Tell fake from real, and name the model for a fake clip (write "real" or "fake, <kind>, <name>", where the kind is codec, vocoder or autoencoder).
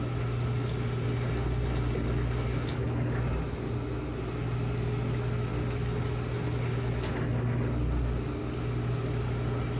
real